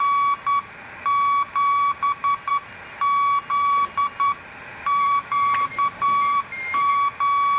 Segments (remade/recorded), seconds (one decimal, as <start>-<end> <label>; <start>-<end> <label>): 0.0-1.5 recorded; 1.5-2.5 remade; 2.5-3.5 recorded; 3.5-6.9 remade; 6.9-7.6 recorded